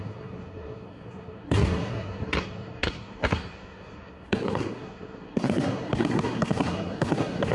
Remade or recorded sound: remade